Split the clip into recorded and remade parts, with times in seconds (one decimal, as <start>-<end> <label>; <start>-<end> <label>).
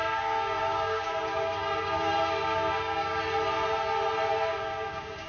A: 0.0-3.2 remade; 3.2-4.5 recorded; 4.5-5.3 remade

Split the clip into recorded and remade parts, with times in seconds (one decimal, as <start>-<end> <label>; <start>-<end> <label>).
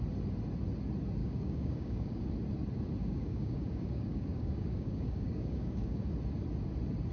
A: 0.0-1.2 recorded; 1.2-2.3 remade; 2.3-3.0 recorded; 3.0-6.1 remade; 6.1-7.1 recorded